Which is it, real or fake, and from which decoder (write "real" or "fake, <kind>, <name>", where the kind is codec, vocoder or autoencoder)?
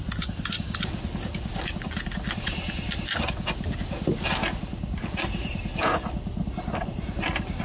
real